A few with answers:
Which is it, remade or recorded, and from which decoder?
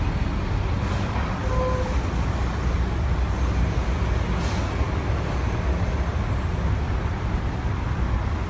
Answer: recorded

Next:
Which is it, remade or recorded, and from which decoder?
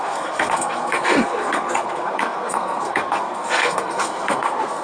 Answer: remade, codec, SNAC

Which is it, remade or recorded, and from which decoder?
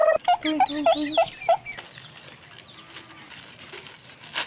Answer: recorded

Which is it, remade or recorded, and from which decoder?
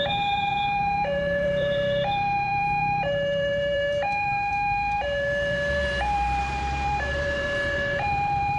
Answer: remade, vocoder, BigVGAN v2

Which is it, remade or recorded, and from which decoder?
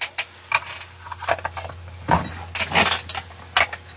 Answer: recorded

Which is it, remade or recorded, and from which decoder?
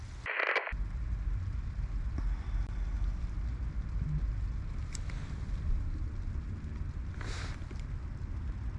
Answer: recorded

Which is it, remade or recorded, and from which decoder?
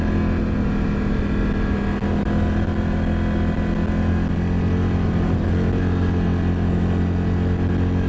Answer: recorded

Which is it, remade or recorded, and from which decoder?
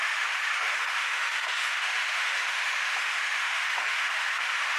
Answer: remade, autoencoder, DAC-VAE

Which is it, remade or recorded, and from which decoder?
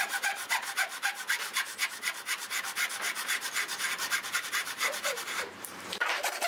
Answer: remade, vocoder, BigVGAN v2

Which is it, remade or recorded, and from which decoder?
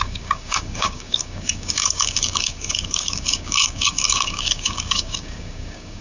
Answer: remade, codec, DAC